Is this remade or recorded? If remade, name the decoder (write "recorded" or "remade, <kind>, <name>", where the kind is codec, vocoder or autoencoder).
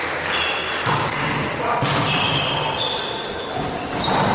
recorded